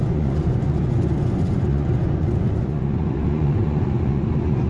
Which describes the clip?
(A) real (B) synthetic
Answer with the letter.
B